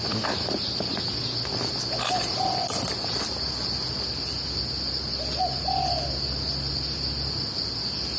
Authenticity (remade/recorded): recorded